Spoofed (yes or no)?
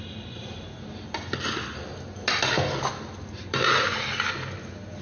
no